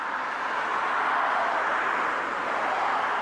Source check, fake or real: real